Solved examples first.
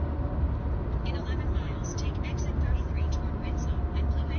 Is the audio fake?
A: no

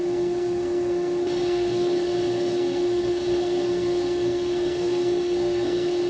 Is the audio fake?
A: yes